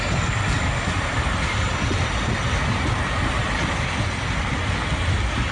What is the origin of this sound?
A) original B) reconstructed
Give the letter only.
A